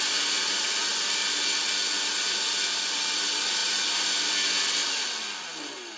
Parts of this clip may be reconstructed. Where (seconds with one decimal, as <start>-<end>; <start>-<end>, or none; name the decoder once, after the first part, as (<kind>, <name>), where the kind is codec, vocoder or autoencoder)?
none